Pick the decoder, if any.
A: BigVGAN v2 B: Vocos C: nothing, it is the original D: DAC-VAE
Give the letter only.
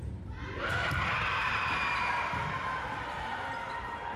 C